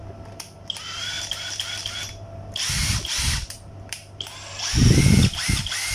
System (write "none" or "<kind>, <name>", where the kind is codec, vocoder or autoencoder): vocoder, BigVGAN v2